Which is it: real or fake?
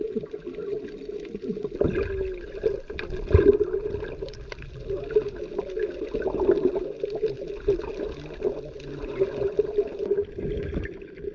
real